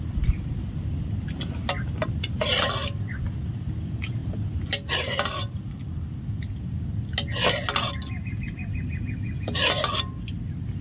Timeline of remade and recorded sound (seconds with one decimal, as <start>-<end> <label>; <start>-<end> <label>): 0.0-10.8 recorded